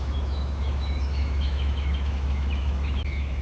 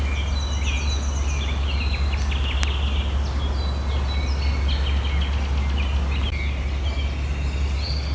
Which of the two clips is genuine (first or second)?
second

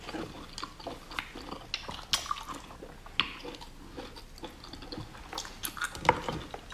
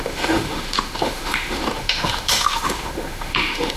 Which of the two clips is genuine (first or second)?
first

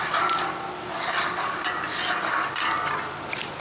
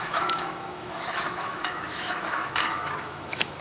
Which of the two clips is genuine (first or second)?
first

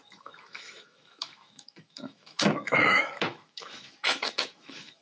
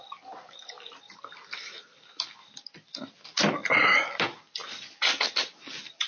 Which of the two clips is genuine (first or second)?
second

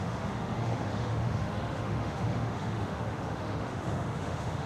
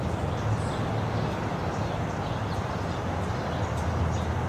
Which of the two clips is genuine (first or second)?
second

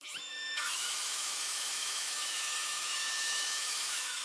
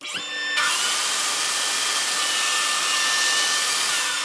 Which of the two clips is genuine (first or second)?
second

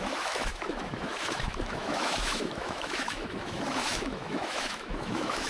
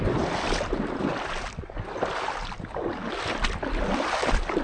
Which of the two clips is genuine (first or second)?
second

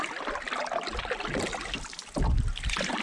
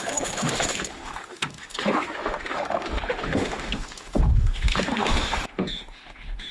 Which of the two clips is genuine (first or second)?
first